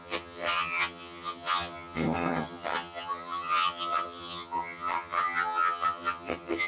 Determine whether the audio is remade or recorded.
remade